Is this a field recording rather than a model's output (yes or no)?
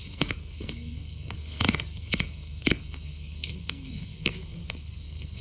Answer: no